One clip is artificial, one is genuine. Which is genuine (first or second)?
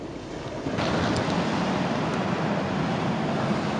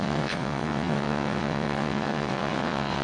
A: first